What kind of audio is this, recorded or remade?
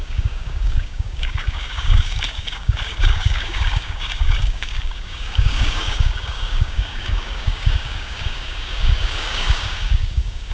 remade